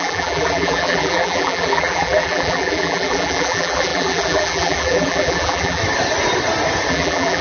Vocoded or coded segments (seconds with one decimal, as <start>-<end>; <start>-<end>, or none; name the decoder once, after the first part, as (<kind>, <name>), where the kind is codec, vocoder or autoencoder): 0.0-5.8 (vocoder, BigVGAN v2); 6.9-7.4